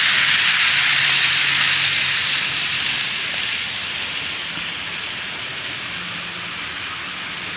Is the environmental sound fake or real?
real